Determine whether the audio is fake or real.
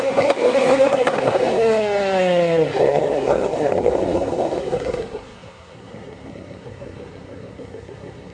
fake